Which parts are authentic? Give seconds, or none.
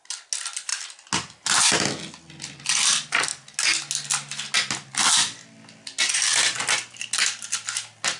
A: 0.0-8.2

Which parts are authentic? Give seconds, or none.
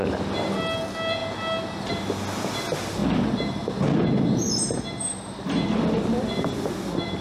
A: 0.0-7.2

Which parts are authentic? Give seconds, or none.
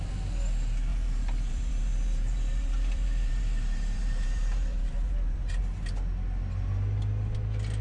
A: 0.0-0.9; 5.6-7.8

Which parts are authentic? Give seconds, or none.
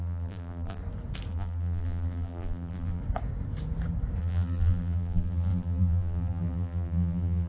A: 0.8-1.3; 3.0-4.2